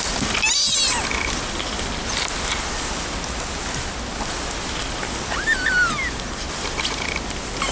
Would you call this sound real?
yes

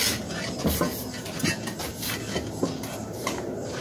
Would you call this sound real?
yes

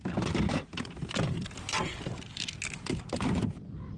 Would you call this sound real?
yes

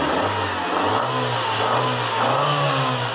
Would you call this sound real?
yes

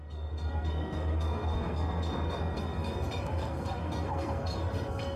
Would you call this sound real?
no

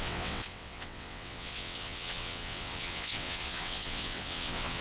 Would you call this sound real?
no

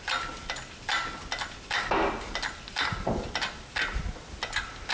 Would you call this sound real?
yes